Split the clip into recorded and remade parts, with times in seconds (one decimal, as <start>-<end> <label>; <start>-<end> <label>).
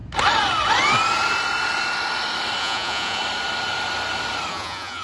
0.0-2.6 recorded; 2.6-3.2 remade; 3.2-4.5 recorded; 4.5-5.0 remade